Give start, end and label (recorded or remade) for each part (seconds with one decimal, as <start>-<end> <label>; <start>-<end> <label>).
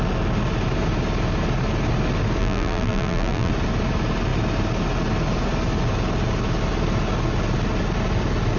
0.0-2.4 recorded; 2.4-3.5 remade; 3.5-8.6 recorded